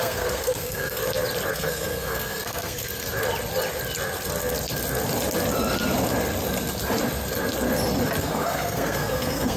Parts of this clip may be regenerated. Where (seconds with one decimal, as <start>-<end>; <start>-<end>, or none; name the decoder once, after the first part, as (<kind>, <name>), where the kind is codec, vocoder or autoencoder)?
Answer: 0.0-1.0 (codec, SNAC); 1.5-2.9; 8.2-9.6